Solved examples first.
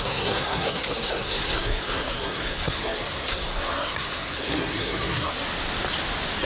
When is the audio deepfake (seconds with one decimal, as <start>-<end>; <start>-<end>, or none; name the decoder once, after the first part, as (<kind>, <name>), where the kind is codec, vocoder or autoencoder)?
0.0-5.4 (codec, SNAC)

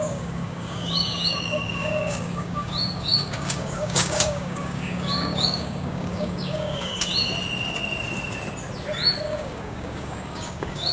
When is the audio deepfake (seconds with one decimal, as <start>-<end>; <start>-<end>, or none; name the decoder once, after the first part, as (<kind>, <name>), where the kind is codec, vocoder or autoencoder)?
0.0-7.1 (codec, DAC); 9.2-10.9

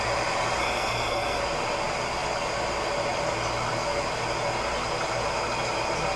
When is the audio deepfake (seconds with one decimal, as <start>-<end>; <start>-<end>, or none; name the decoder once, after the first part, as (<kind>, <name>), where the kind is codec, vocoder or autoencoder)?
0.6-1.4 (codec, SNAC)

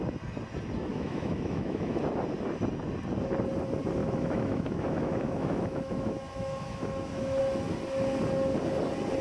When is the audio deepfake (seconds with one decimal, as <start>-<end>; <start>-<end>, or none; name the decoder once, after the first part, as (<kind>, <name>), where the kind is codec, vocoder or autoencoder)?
0.9-2.0 (autoencoder, DAC-VAE); 4.0-7.4

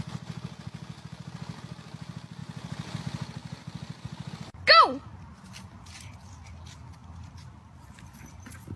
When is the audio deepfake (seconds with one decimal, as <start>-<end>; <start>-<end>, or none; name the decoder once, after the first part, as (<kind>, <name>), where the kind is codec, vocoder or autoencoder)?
none

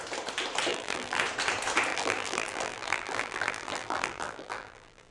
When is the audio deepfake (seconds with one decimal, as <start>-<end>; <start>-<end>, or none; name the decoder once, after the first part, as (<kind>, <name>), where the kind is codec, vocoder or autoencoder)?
0.7-1.2 (vocoder, BigVGAN v2); 1.9-5.1

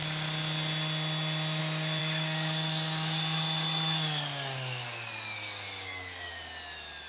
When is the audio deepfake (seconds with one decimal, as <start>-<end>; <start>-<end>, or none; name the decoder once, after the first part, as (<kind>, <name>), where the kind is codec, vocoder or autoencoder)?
2.0-6.3 (codec, DAC)

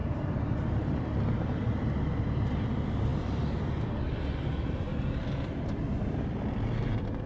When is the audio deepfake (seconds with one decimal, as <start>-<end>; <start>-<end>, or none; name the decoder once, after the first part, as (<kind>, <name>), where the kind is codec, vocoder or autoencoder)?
0.0-4.9 (vocoder, BigVGAN v2)